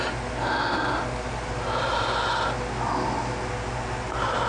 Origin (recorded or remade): recorded